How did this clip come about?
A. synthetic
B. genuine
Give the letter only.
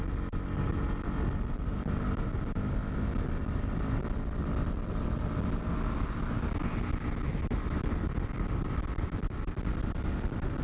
B